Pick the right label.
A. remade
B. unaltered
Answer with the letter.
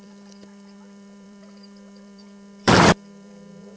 A